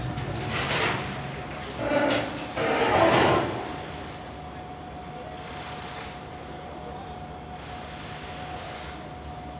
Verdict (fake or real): real